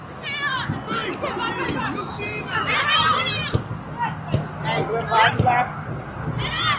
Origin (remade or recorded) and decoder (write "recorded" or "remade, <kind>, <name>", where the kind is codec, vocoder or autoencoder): recorded